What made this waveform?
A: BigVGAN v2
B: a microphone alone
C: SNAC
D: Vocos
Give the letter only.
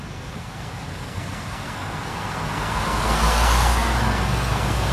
C